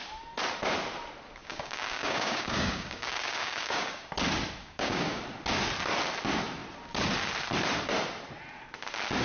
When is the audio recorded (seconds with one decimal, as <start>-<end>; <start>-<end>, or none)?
0.0-1.4; 4.1-4.6; 5.2-9.2

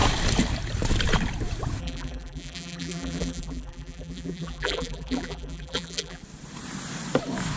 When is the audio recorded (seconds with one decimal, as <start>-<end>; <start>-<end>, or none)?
0.0-1.8; 6.2-7.6

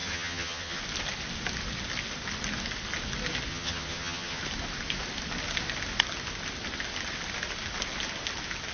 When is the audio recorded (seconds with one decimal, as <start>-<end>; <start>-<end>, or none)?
0.8-3.5; 4.4-8.7

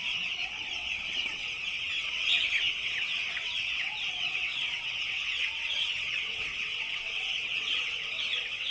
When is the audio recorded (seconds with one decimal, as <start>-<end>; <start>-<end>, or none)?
none

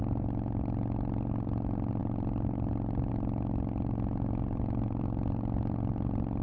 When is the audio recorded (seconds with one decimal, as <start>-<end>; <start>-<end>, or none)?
0.0-6.4